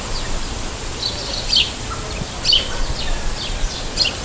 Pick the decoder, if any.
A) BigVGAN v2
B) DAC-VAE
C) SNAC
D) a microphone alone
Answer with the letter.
D